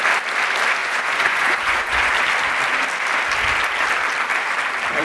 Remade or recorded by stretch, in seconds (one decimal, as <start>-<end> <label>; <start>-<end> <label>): 0.0-0.8 recorded; 0.8-2.1 remade; 2.1-5.0 recorded